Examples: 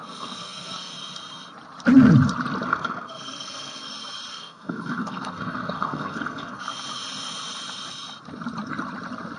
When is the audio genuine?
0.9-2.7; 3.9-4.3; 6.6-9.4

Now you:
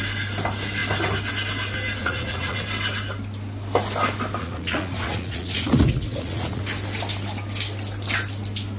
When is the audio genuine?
0.0-2.0; 2.6-4.4; 6.6-8.8

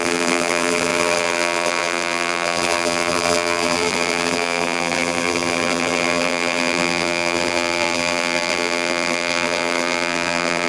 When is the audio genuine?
none

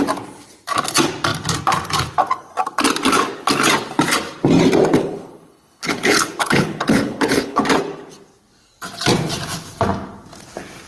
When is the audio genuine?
0.0-4.9; 7.6-10.9

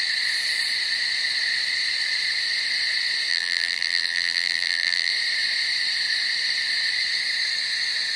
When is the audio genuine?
0.0-3.3; 5.1-8.2

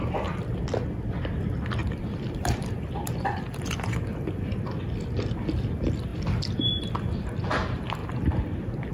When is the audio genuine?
0.0-1.8; 4.8-6.1; 6.9-8.9

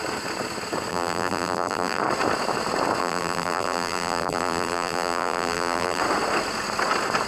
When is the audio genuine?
0.0-0.9; 2.0-3.0; 6.0-7.3

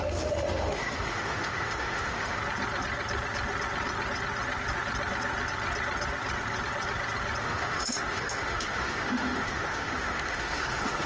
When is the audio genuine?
2.4-7.4